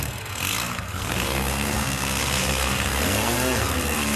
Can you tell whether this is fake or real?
fake